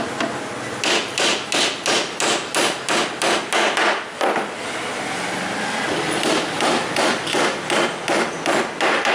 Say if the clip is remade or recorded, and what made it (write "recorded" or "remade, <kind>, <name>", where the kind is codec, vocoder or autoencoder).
recorded